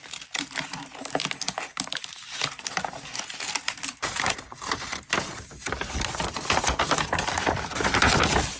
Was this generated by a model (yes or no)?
no